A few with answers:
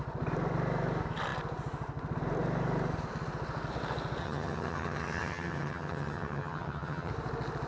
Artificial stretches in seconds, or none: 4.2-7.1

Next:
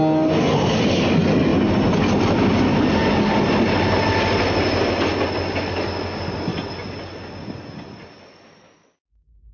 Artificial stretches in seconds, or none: none

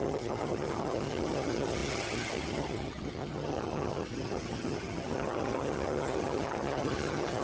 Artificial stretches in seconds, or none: 0.0-7.4